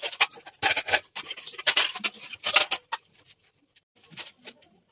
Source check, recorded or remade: remade